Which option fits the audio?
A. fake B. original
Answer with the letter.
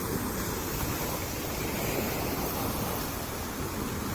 B